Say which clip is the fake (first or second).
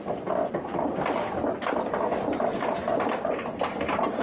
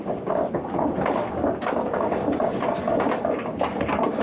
second